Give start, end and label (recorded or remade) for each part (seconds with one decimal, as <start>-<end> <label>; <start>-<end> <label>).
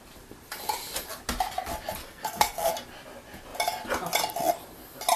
0.0-2.0 recorded; 2.0-2.7 remade; 2.7-5.2 recorded